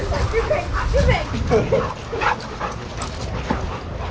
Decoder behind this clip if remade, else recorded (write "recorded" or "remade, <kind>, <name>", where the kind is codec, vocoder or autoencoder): recorded